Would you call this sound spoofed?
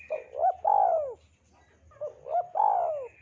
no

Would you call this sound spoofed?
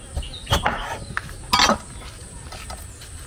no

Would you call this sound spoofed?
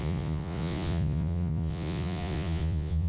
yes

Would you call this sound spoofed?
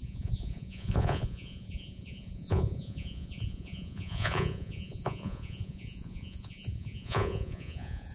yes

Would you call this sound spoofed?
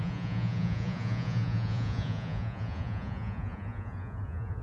yes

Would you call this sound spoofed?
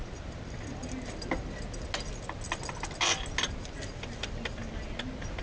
no